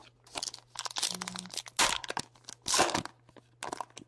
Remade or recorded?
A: recorded